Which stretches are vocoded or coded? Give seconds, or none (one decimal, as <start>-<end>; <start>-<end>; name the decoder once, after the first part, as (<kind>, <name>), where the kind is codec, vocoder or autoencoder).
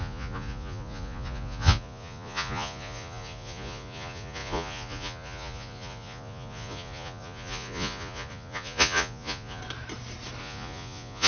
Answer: 0.0-9.6 (vocoder, Vocos); 10.4-11.3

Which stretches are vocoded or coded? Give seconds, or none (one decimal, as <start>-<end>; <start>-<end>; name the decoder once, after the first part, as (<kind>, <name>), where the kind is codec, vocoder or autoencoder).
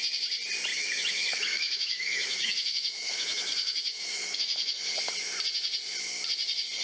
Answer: 0.7-4.8 (autoencoder, DAC-VAE)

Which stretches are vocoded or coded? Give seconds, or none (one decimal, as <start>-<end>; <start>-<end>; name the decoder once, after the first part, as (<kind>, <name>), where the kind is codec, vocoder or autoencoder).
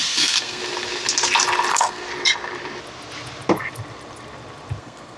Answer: 0.0-0.6 (codec, SNAC); 1.7-2.1; 4.8-5.2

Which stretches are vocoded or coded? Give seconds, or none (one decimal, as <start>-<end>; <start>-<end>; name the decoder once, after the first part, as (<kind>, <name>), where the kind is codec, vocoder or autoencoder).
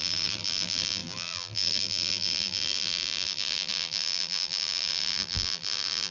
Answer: 0.0-6.1 (vocoder, BigVGAN v2)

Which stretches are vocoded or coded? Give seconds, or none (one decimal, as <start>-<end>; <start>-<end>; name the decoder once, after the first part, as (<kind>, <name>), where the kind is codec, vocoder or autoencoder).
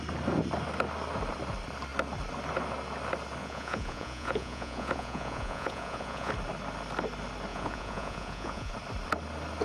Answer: 3.4-6.3 (vocoder, Vocos); 7.5-8.7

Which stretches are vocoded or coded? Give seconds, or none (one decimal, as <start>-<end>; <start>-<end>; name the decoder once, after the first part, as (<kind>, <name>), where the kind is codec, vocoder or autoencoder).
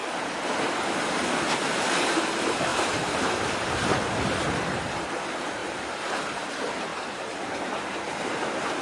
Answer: 2.7-3.9 (vocoder, BigVGAN v2); 5.6-6.5; 6.9-8.1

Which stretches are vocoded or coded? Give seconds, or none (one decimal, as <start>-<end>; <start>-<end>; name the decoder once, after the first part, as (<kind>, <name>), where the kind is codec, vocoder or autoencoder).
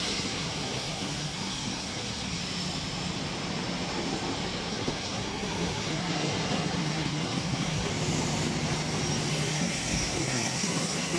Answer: 0.0-2.4 (codec, SNAC); 4.7-7.9; 9.3-11.2